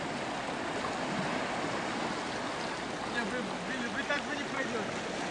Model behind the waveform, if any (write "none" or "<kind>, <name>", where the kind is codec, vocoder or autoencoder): none